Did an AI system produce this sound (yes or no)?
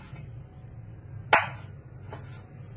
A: no